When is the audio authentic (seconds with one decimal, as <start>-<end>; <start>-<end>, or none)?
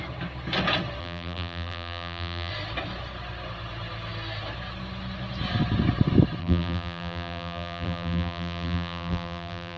0.0-1.0; 2.5-6.4